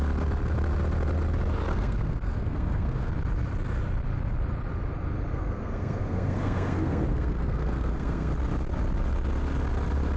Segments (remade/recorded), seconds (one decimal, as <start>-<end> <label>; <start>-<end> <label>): 0.0-1.7 recorded; 1.7-3.1 remade; 3.1-5.3 recorded; 5.3-8.3 remade; 8.3-10.2 recorded